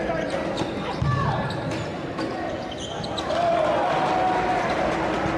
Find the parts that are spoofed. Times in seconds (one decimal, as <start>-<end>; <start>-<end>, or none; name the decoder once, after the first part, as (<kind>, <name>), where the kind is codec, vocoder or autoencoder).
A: none